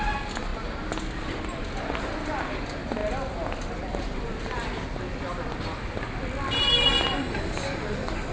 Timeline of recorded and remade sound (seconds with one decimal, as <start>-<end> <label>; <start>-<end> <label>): 0.0-8.3 recorded